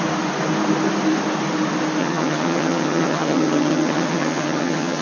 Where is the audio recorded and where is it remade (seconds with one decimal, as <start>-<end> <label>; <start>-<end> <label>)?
0.0-2.0 recorded; 2.0-5.0 remade